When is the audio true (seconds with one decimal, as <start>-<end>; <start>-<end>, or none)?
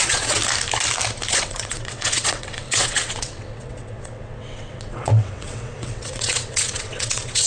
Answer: 0.4-1.3